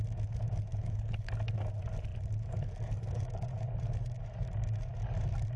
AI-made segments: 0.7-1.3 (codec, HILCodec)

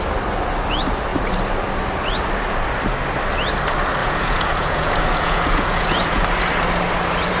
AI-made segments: 4.0-6.2 (vocoder, Vocos)